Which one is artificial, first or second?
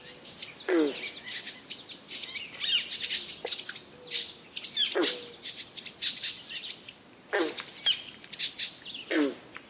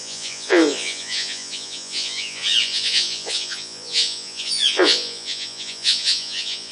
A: second